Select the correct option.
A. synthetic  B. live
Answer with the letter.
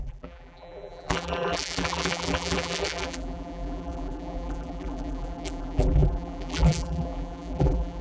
A